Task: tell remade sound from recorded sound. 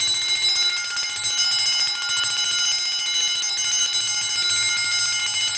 recorded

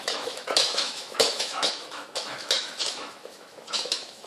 remade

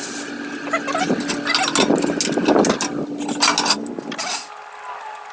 recorded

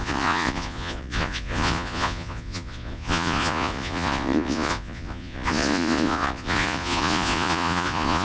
remade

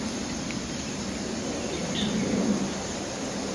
recorded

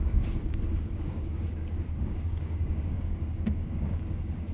remade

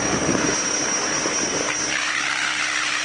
remade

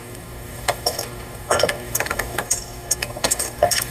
remade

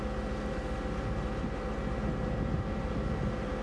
recorded